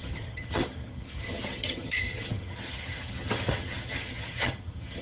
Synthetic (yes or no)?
yes